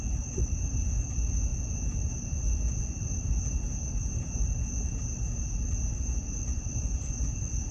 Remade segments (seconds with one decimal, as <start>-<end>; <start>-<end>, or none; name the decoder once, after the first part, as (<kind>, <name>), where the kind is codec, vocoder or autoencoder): none